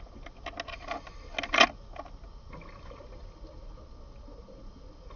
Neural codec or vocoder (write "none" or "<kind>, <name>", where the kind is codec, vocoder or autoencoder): none